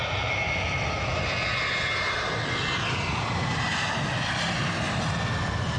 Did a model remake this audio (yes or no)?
no